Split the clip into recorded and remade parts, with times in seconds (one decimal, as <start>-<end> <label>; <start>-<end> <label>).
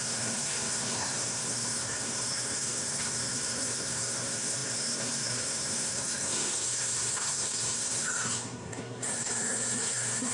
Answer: 0.0-10.3 remade